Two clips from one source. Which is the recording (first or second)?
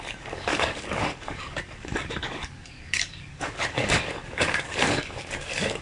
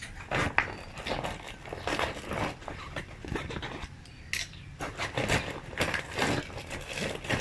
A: second